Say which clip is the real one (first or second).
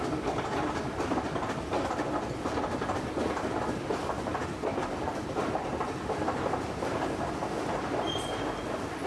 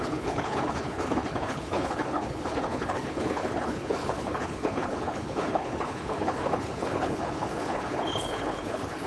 first